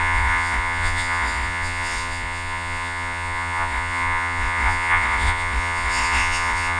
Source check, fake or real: fake